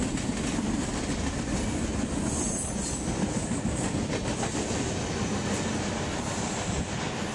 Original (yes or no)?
yes